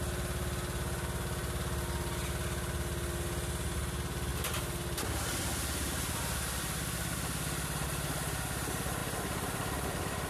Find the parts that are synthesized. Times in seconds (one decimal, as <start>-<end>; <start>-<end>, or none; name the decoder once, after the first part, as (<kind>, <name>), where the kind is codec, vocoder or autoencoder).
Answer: 4.3-6.2 (vocoder, BigVGAN v2); 9.0-10.3